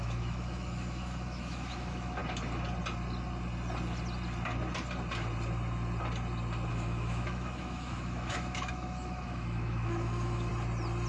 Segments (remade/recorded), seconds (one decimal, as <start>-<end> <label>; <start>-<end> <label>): 0.0-2.2 remade; 2.2-6.7 recorded; 6.7-10.5 remade; 10.5-11.1 recorded